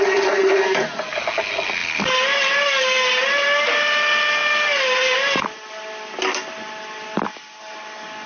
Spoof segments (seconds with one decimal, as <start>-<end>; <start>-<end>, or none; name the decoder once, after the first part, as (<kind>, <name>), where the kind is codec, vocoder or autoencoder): none